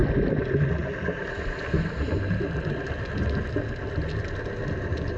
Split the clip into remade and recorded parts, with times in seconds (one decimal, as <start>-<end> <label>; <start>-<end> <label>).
0.0-5.2 recorded